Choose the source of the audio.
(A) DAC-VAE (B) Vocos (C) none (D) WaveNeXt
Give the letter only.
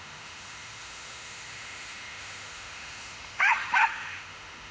A